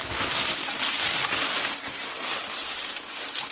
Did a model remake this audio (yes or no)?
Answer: no